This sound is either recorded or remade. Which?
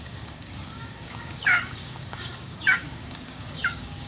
remade